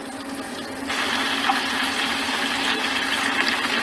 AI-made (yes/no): no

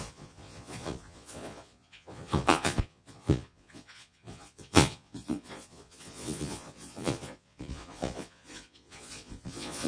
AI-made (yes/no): yes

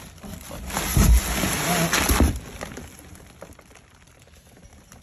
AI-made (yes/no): no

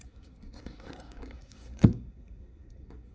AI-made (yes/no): yes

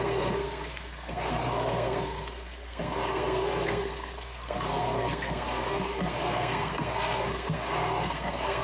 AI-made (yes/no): yes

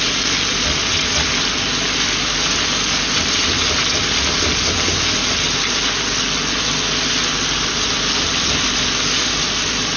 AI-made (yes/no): no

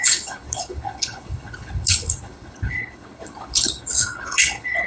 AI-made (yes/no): yes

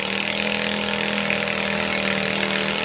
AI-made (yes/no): no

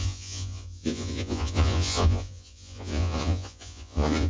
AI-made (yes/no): yes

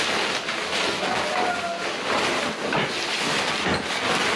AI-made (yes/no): no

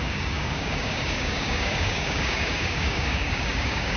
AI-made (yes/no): yes